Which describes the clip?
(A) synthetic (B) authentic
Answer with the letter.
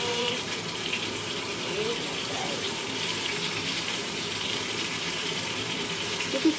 A